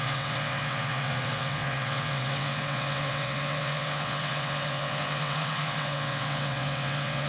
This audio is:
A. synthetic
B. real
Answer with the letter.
A